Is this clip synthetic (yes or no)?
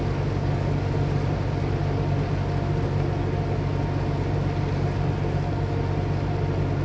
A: no